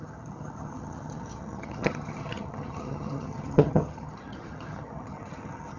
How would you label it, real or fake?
fake